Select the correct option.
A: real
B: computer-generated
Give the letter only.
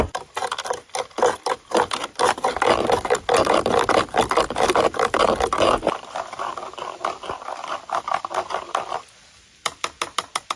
B